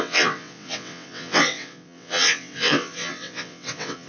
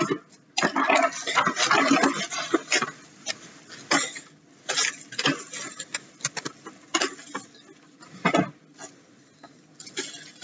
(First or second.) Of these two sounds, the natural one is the second